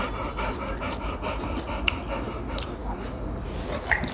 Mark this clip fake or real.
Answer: real